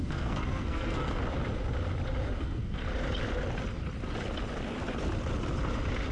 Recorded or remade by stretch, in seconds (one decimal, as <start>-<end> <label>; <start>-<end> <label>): 0.0-1.2 remade; 1.2-2.4 recorded; 2.4-2.8 remade; 2.8-6.1 recorded